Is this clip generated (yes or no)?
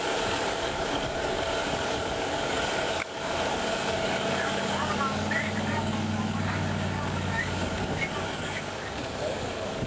yes